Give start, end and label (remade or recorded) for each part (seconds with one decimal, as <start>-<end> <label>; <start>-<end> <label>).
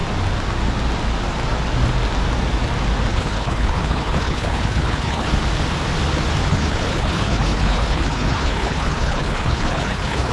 0.0-3.1 recorded; 3.1-5.3 remade; 5.3-6.5 recorded; 6.5-10.3 remade